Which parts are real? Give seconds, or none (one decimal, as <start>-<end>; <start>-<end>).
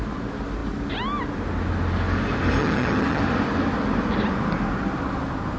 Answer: 0.0-2.6; 3.2-5.6